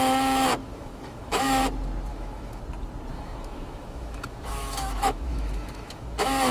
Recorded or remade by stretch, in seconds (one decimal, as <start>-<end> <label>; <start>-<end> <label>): 0.0-0.6 recorded; 0.6-1.6 remade; 1.6-2.1 recorded; 2.1-2.6 remade; 2.6-3.1 recorded; 3.1-6.5 remade